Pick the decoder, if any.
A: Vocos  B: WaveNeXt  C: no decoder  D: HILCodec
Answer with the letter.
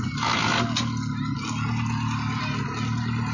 C